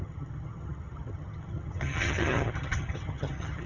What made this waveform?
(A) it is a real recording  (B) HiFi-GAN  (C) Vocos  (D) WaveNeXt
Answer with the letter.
B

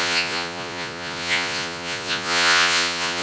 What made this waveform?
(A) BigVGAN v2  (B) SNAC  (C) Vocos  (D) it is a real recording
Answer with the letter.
C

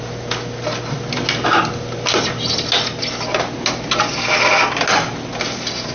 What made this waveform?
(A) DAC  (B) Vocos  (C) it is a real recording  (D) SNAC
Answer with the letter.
C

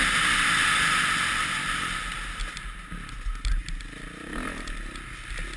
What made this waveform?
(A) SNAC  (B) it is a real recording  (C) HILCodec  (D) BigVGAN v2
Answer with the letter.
B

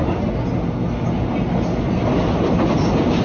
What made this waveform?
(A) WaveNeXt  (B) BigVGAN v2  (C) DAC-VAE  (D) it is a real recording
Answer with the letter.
D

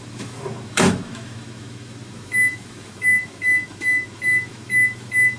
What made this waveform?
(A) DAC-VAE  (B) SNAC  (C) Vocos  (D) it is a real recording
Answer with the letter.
A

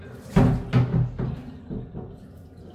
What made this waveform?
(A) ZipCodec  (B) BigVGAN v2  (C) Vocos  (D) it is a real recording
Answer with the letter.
D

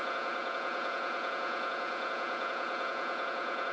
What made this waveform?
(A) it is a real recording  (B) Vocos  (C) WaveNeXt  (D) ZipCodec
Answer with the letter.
B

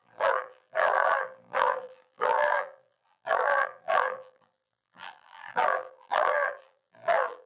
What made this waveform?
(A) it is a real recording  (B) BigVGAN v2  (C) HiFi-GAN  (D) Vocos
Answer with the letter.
B